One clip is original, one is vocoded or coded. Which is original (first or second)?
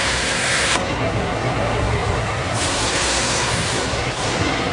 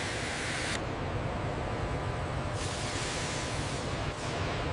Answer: second